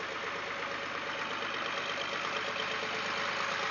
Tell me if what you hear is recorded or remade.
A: recorded